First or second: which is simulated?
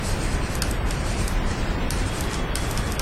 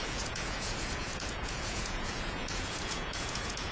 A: second